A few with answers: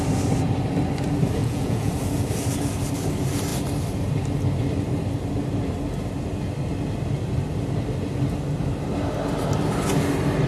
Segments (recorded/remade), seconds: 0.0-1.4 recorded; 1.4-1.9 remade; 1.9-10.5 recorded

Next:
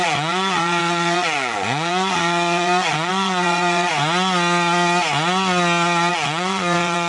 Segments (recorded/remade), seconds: 0.0-3.9 remade; 3.9-6.1 recorded; 6.1-7.1 remade